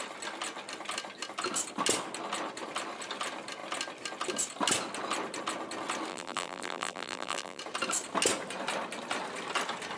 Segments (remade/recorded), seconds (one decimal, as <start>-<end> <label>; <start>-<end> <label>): 0.0-6.1 recorded; 6.1-7.6 remade; 7.6-10.0 recorded